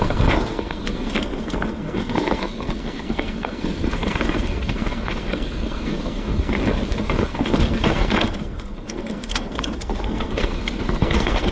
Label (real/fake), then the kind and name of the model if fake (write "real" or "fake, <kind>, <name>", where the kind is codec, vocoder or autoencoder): fake, codec, SNAC